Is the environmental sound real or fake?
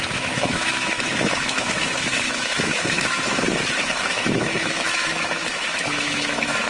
fake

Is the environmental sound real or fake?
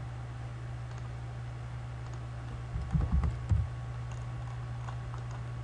real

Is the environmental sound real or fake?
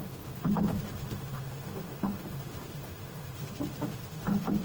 fake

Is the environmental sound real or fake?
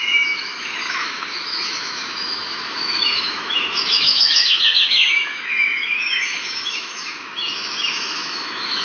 fake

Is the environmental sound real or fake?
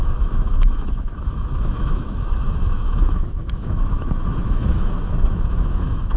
fake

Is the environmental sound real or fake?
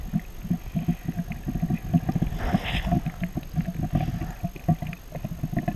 real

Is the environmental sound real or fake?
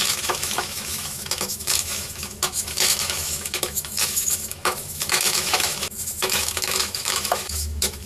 fake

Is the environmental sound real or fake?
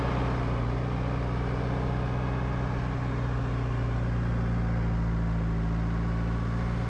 real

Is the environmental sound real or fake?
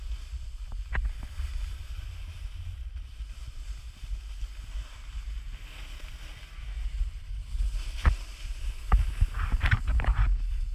real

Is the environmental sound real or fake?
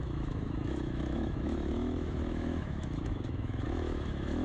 fake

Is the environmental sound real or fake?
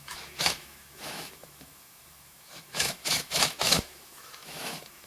fake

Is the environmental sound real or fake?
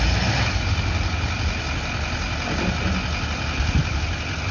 real